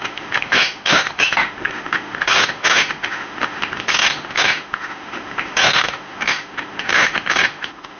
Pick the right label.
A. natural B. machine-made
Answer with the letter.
B